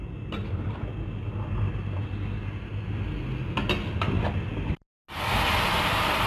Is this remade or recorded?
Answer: recorded